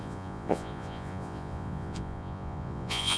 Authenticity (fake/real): fake